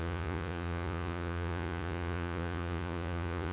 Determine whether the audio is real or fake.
fake